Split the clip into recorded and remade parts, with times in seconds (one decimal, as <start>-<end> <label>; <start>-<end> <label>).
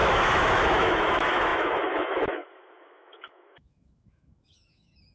0.0-5.1 remade